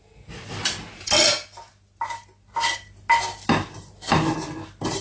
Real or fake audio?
real